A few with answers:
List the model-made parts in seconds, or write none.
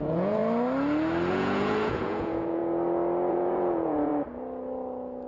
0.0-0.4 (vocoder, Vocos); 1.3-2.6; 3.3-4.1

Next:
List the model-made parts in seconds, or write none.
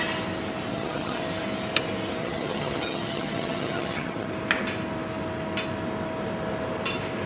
0.7-1.2 (vocoder, HiFi-GAN); 2.2-4.3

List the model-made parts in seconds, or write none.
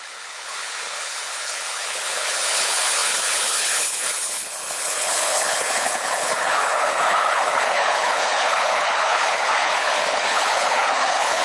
0.0-11.4 (codec, HILCodec)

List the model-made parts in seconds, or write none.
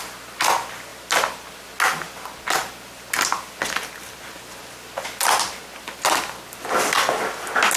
none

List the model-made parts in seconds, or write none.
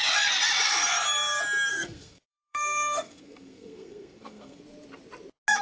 1.7-4.6 (codec, SNAC)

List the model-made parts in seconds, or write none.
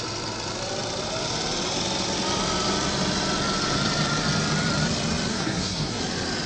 5.3-6.0 (codec, SNAC)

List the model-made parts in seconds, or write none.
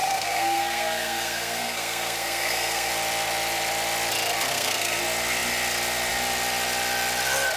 0.0-2.9 (codec, SNAC); 4.5-5.0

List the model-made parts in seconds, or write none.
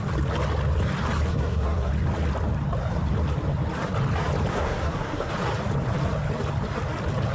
1.3-1.9 (codec, SNAC); 4.5-5.3